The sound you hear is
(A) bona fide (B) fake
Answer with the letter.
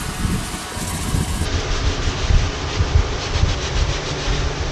A